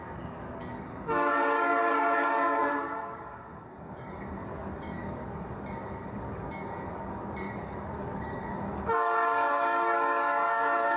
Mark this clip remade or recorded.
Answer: remade